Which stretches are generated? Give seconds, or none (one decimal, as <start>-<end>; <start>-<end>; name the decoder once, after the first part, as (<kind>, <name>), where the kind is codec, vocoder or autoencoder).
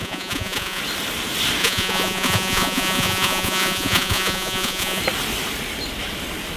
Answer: 0.0-0.8 (vocoder, Vocos); 1.6-5.0